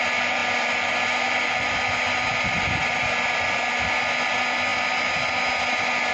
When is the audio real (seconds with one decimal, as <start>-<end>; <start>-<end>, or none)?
0.0-6.1